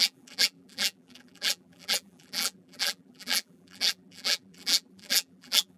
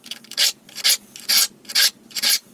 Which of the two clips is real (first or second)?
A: second